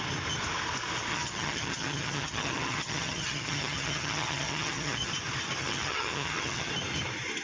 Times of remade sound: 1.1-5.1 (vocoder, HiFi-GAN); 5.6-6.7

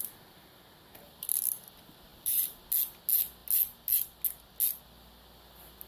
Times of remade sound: 2.1-2.6 (vocoder, BigVGAN v2)

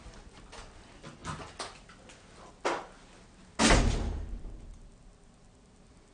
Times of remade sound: none

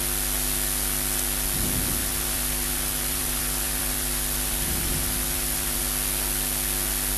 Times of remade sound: 2.0-5.8 (vocoder, BigVGAN v2)

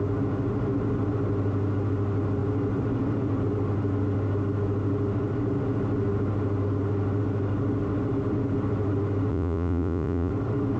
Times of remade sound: 9.3-10.3 (vocoder, Vocos)

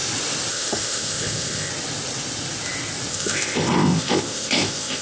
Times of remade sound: 0.5-1.7 (codec, ZipCodec); 3.1-5.0